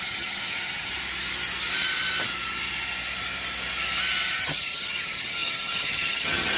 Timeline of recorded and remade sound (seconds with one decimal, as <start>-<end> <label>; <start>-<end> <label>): 0.0-0.9 remade; 0.9-4.3 recorded; 4.3-6.6 remade